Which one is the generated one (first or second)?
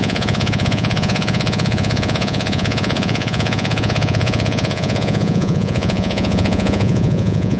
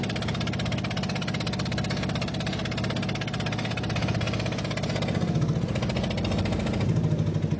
first